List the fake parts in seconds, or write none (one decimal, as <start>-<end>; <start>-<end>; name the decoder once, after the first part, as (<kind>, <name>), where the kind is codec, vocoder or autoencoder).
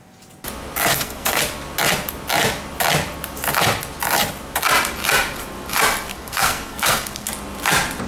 0.9-1.4 (codec, SNAC); 6.1-7.3